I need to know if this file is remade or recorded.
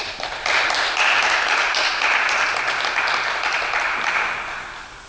recorded